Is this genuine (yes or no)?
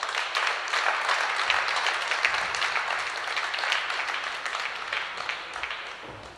yes